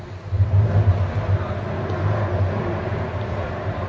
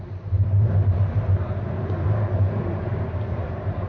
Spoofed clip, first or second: second